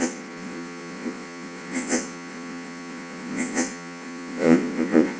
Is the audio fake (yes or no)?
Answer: yes